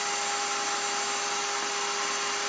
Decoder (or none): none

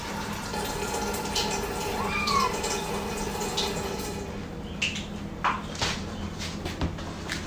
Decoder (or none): none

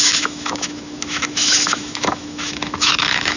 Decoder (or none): autoencoder, DAC-VAE